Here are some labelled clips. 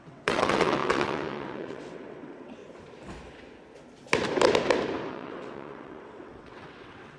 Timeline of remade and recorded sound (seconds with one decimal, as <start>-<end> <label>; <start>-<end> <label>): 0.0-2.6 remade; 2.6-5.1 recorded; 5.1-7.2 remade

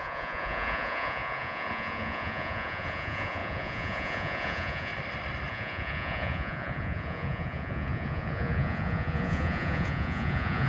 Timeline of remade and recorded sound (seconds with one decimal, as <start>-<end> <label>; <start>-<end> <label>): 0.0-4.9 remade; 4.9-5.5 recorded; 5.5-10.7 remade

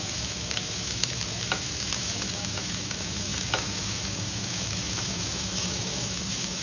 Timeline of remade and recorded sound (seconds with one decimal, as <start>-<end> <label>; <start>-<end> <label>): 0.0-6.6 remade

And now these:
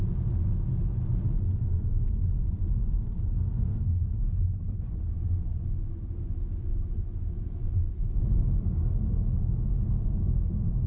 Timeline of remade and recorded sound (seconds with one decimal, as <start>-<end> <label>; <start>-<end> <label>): 0.0-3.9 recorded; 3.9-5.1 remade; 5.1-10.9 recorded